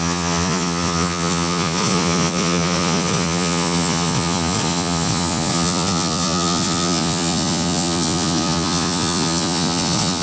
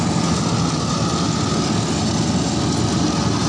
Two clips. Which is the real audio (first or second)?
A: second